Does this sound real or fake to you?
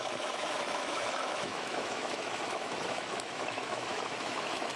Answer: fake